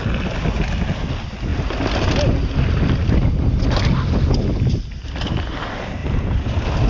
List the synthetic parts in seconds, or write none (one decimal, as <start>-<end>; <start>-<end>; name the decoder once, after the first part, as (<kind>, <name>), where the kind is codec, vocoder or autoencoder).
none